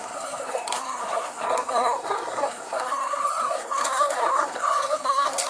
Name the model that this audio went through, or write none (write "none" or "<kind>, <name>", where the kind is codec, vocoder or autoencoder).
codec, SNAC